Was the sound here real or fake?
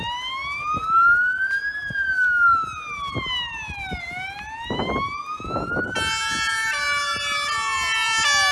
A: real